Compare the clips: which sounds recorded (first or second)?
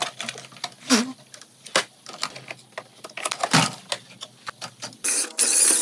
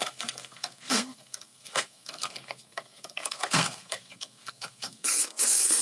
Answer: first